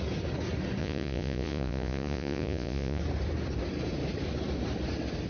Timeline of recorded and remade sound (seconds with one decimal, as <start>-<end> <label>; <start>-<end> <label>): 0.0-0.8 recorded; 0.8-3.0 remade; 3.0-5.3 recorded